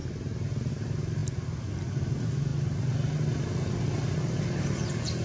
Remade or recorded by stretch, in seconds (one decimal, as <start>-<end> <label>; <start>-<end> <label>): 0.0-5.2 recorded